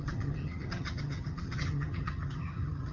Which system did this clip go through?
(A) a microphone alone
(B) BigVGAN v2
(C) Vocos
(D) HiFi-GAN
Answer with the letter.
D